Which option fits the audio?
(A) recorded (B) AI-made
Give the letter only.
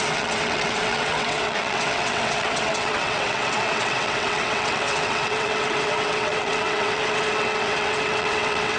B